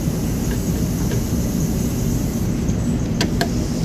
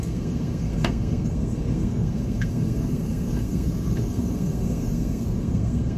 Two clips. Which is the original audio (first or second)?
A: first